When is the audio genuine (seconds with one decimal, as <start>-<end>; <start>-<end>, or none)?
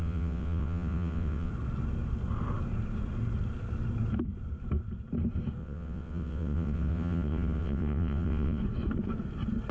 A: 1.5-5.6; 8.6-9.7